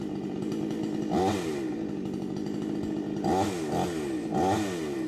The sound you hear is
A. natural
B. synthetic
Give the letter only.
A